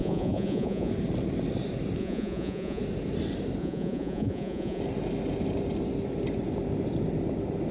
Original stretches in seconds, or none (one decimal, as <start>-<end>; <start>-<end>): 0.9-2.0; 2.8-3.6; 4.8-7.7